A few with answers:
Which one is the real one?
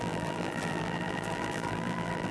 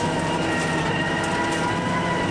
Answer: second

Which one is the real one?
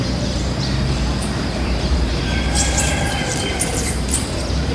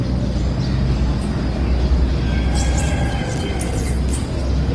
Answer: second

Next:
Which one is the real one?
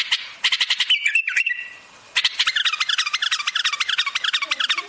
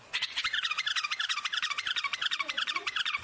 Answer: first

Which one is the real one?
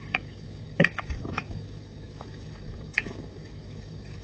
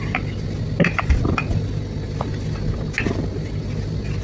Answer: second